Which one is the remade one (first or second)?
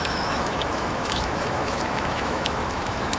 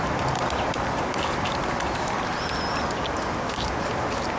first